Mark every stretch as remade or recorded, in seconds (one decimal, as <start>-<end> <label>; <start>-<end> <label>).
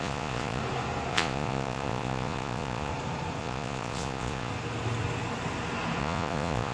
0.0-0.6 remade; 0.6-1.1 recorded; 1.1-2.9 remade; 2.9-3.4 recorded; 3.4-4.5 remade; 4.5-6.0 recorded; 6.0-6.7 remade